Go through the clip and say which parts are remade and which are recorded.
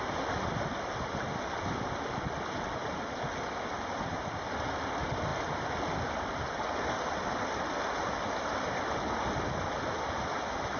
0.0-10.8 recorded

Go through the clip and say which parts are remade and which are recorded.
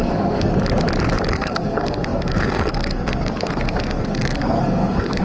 0.0-0.5 remade; 0.5-1.3 recorded; 1.3-5.2 remade